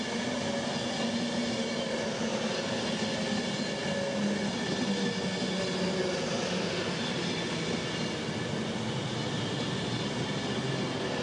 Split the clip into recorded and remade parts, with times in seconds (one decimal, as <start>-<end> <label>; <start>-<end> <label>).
0.0-11.2 recorded